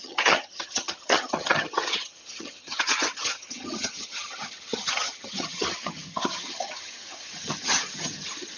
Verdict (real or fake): fake